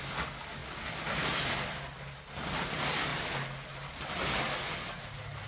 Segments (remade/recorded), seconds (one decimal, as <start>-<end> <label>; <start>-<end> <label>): 0.0-5.5 recorded